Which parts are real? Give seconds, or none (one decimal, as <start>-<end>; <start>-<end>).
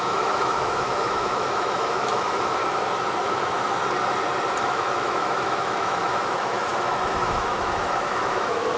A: 2.6-3.2; 3.8-4.6